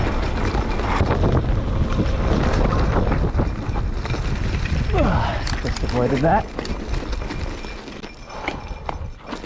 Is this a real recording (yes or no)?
yes